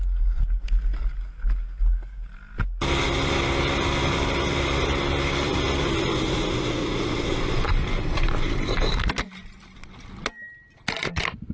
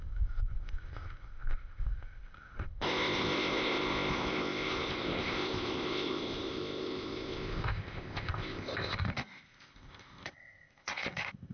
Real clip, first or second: first